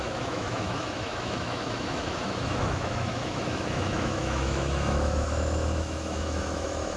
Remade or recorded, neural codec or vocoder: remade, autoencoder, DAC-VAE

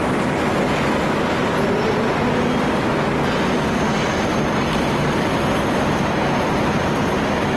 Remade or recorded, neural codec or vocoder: recorded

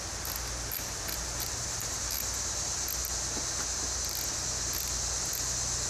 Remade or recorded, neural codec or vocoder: recorded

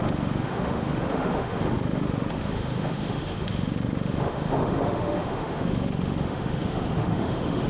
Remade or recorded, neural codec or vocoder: remade, autoencoder, DAC-VAE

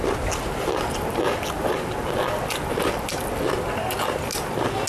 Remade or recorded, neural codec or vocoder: recorded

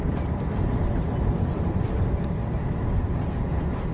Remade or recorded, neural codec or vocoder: recorded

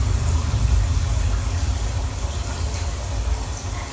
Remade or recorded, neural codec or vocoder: recorded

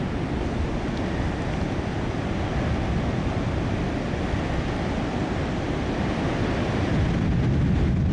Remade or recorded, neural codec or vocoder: recorded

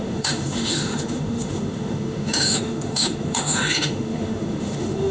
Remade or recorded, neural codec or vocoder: remade, autoencoder, DAC-VAE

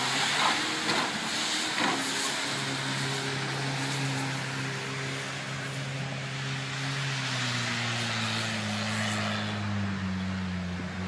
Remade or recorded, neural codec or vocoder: recorded